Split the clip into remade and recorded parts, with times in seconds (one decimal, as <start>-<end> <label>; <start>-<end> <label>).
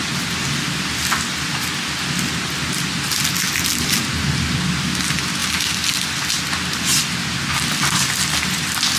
0.0-9.0 recorded